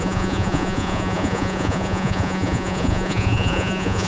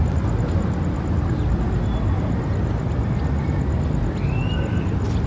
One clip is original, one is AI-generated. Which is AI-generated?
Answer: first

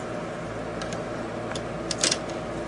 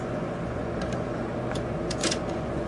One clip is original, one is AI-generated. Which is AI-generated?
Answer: second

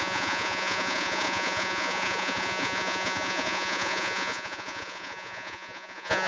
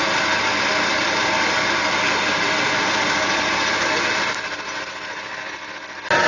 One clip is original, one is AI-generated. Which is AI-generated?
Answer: first